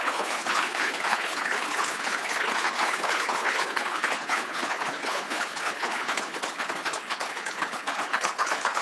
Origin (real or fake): fake